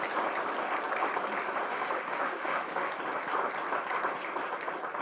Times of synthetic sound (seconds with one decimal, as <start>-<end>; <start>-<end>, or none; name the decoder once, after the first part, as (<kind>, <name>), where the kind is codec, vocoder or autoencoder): 1.7-2.9 (autoencoder, DAC-VAE)